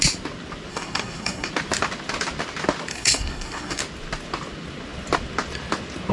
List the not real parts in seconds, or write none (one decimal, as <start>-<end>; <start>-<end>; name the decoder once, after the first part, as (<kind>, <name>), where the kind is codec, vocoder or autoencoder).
0.7-1.5 (codec, SNAC); 2.9-3.8